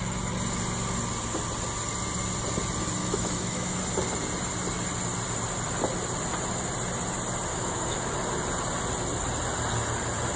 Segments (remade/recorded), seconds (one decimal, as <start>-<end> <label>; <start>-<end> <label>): 0.0-3.0 recorded; 3.0-3.8 remade; 3.8-7.5 recorded; 7.5-8.1 remade; 8.1-10.4 recorded